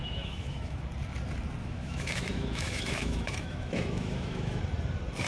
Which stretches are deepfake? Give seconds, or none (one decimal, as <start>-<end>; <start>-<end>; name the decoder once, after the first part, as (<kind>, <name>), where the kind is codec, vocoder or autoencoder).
0.0-0.8 (autoencoder, DAC-VAE); 1.6-4.6